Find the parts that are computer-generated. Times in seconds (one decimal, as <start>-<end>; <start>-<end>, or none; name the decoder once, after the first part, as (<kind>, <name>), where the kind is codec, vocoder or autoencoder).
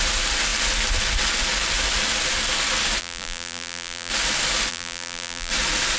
3.0-4.1 (vocoder, BigVGAN v2); 4.7-5.5